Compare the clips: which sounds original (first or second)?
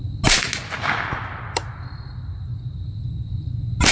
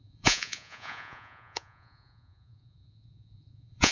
first